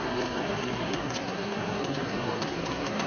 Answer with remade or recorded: remade